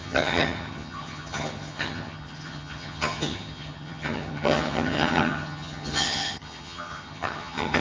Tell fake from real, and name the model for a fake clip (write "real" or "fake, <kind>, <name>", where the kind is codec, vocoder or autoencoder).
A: fake, vocoder, HiFi-GAN